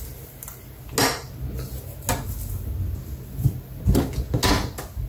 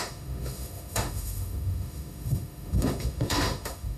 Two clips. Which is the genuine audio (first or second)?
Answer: first